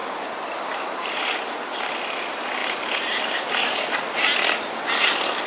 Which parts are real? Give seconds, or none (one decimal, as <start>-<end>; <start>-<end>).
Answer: 0.0-2.6